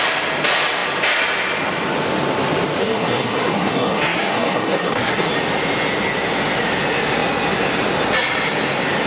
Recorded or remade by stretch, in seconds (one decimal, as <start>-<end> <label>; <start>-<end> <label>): 0.0-2.8 recorded; 2.8-5.3 remade; 5.3-9.1 recorded